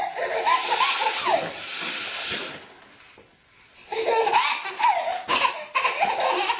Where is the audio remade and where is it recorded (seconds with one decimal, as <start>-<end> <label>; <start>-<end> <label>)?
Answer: 0.0-6.6 recorded